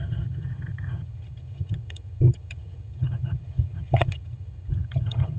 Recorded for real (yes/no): no